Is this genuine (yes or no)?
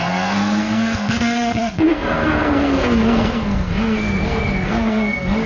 no